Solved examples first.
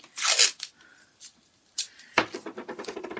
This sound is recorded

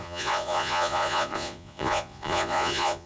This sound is remade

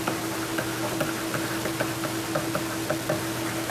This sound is remade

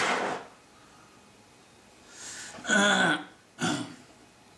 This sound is recorded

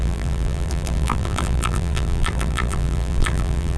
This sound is remade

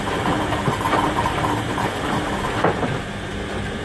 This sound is remade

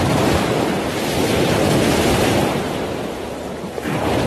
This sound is remade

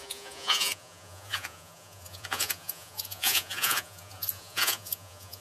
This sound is remade